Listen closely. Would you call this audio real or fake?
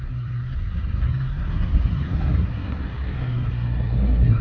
fake